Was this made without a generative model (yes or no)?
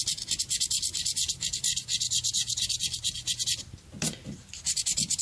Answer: yes